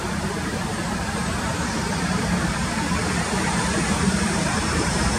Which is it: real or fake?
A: fake